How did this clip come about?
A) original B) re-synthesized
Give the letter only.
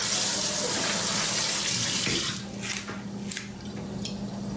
A